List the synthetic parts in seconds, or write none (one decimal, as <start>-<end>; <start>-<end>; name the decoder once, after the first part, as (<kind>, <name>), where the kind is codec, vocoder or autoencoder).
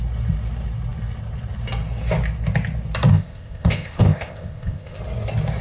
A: 3.1-5.0 (codec, ZipCodec)